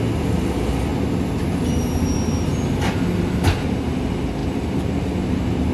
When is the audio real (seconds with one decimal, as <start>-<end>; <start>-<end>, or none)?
0.0-5.7